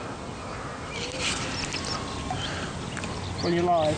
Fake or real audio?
real